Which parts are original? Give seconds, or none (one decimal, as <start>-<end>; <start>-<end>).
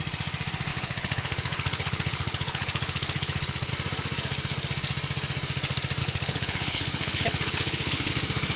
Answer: 0.0-0.7; 3.7-6.0; 8.1-8.6